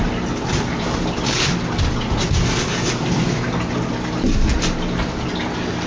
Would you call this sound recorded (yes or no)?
yes